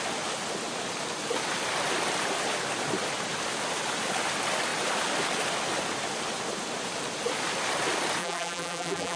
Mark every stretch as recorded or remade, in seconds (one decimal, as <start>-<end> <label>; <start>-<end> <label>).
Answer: 0.0-8.2 recorded; 8.2-9.2 remade